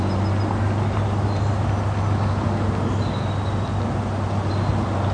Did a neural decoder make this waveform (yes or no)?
no